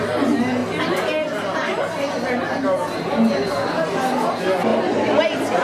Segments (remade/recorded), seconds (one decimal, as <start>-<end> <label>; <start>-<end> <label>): 0.0-5.6 recorded